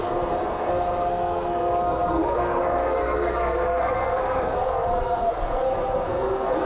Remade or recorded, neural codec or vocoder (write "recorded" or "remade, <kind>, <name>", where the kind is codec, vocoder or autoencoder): remade, codec, SNAC